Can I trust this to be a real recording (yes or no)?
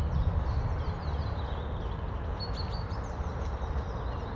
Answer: yes